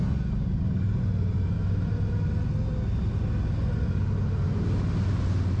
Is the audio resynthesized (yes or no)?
no